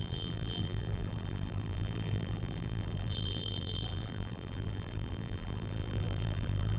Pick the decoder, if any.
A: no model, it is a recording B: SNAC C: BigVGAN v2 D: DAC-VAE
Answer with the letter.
C